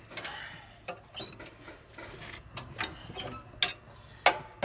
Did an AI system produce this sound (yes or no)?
no